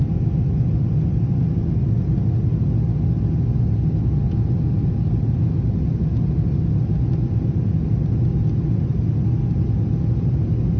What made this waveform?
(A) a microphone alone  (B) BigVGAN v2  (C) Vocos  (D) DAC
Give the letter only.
A